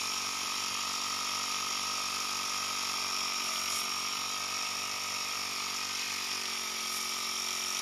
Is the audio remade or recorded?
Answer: remade